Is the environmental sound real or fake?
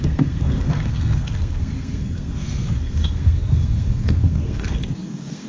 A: fake